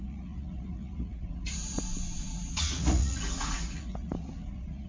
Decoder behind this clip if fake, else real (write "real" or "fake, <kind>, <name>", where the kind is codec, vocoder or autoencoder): fake, vocoder, Vocos